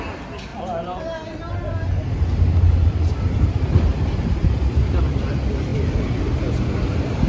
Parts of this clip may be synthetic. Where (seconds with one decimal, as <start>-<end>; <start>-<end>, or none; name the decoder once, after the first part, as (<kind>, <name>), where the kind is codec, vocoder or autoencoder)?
0.5-1.0 (vocoder, BigVGAN v2); 2.8-5.2